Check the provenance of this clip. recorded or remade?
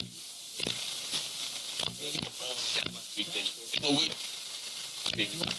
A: recorded